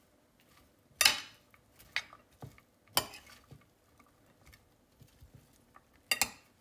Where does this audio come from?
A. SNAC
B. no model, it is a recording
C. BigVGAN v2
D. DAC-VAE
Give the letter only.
B